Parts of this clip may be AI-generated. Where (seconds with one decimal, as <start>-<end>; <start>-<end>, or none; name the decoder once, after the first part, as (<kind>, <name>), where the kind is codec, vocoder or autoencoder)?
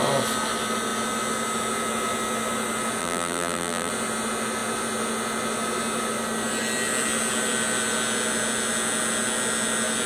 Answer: 3.0-3.9 (vocoder, BigVGAN v2)